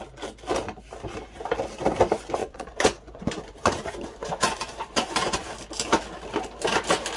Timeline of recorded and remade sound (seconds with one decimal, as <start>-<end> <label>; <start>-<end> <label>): 0.0-2.4 recorded; 2.4-5.5 remade; 5.5-7.2 recorded